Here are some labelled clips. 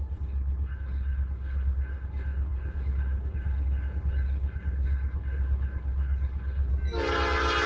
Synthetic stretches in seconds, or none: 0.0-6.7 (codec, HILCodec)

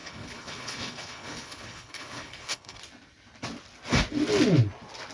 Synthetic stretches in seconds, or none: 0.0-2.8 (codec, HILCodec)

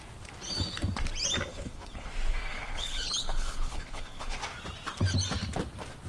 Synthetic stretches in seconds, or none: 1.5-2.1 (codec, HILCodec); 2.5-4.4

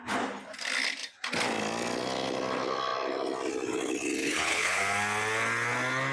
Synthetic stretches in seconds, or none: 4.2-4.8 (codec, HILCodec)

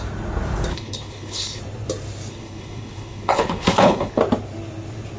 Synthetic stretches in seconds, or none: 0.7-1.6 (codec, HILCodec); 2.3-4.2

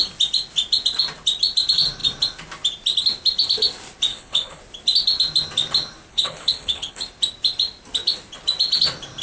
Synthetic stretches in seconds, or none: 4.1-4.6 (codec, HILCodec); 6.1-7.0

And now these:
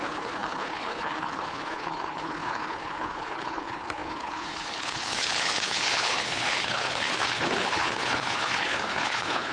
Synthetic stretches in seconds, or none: 0.0-9.5 (codec, HILCodec)